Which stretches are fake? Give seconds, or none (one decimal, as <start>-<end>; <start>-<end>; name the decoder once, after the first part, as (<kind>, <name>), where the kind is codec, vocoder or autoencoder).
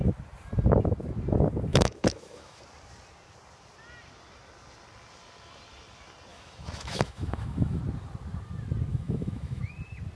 1.7-2.6 (autoencoder, DAC-VAE); 6.3-7.8; 8.9-9.6